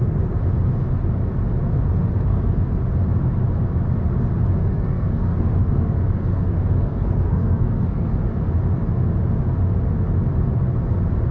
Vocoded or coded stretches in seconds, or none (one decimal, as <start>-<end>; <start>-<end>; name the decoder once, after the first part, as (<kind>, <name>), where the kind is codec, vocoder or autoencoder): 2.0-2.6 (codec, SNAC); 4.6-8.2